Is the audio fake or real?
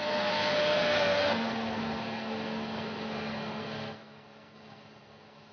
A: fake